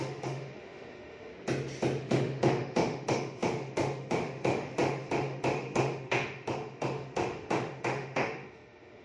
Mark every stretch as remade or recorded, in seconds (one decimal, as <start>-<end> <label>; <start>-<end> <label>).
0.0-1.3 remade; 1.3-2.0 recorded; 2.0-9.0 remade